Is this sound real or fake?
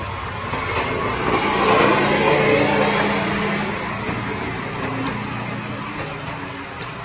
real